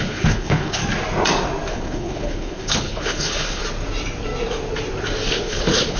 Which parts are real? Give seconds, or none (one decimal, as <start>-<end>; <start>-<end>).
0.8-1.7; 3.6-5.3